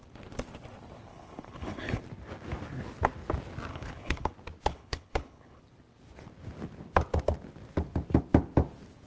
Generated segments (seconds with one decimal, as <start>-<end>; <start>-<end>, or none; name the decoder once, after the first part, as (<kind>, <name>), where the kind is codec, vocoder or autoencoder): 1.1-2.0 (codec, HILCodec); 3.7-4.3; 4.7-5.6